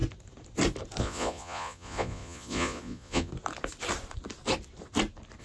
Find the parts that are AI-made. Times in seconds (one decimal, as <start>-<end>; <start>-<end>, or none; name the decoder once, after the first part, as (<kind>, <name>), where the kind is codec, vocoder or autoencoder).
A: 1.0-3.3 (vocoder, Vocos)